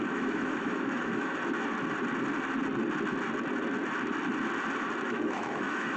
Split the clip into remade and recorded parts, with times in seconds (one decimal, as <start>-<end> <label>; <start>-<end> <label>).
0.0-1.4 remade; 1.4-5.0 recorded; 5.0-6.0 remade